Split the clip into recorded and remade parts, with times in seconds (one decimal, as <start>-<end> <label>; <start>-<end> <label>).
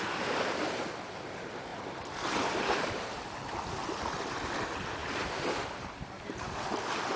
0.0-1.7 recorded; 1.7-3.2 remade; 3.2-5.0 recorded; 5.0-6.7 remade; 6.7-7.2 recorded